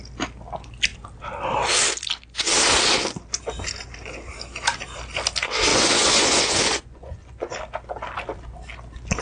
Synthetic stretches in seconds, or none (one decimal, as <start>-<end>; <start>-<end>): 5.7-7.5